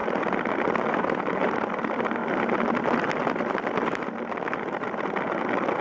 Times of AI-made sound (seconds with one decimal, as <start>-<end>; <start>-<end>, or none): 0.9-2.2